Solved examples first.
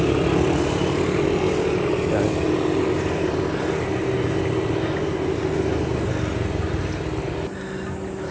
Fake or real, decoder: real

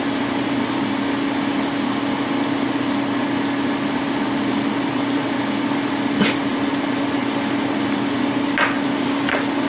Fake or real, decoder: real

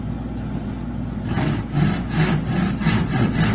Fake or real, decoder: real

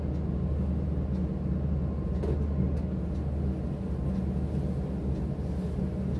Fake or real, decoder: real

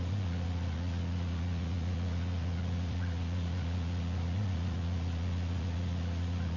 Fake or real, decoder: fake, vocoder, Vocos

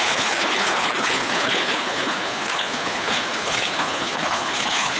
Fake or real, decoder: fake, codec, HILCodec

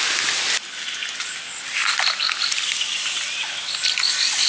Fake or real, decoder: real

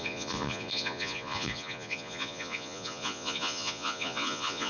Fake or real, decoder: fake, vocoder, Vocos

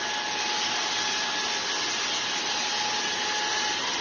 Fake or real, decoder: real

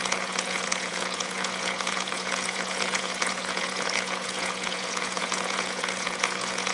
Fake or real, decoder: fake, vocoder, Vocos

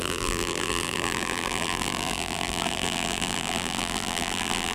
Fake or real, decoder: fake, vocoder, BigVGAN v2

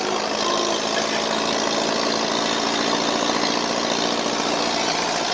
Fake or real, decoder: real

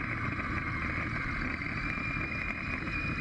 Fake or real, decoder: real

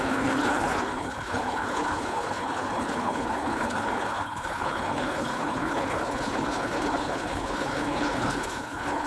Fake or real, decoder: fake, codec, HILCodec